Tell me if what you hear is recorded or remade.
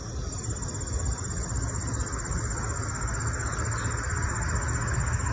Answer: recorded